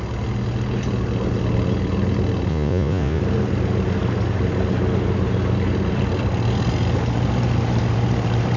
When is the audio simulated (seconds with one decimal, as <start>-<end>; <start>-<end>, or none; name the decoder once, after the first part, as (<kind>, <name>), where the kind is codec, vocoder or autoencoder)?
2.5-3.2 (vocoder, Vocos)